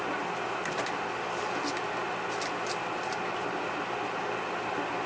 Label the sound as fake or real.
real